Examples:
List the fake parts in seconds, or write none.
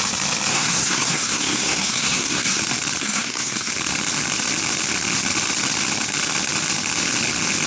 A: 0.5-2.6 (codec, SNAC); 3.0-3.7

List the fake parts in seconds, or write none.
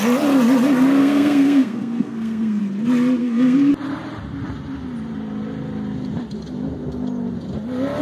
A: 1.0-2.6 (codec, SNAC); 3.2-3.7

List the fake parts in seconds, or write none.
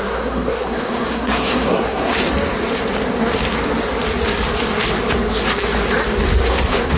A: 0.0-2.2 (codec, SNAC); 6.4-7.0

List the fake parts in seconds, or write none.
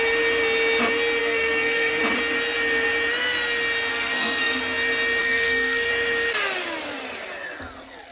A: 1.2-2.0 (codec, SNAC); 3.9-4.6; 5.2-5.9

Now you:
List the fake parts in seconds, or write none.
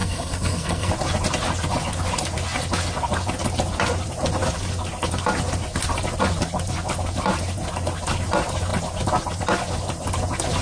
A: 0.0-0.9 (codec, SNAC)